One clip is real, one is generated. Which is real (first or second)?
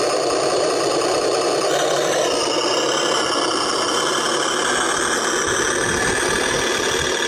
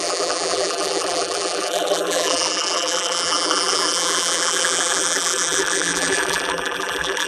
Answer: first